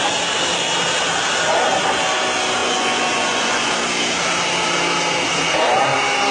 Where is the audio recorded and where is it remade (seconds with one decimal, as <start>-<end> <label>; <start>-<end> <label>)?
0.0-2.6 recorded; 2.6-3.7 remade; 3.7-6.3 recorded